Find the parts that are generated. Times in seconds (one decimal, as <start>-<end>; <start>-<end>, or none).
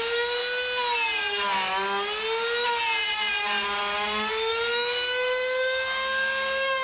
0.0-0.4; 4.3-6.8